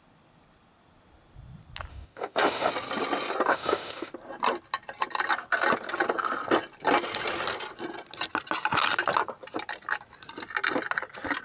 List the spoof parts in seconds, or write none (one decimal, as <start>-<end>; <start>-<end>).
1.9-2.7; 3.5-4.1